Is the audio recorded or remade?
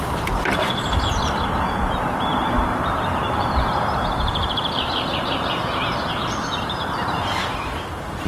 remade